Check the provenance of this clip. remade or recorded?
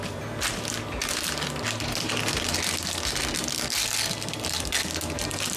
recorded